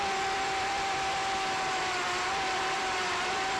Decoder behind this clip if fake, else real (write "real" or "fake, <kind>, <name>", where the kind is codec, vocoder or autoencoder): fake, vocoder, BigVGAN v2